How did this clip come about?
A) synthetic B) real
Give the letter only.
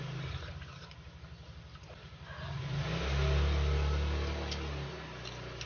B